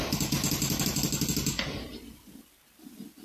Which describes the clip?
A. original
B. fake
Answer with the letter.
A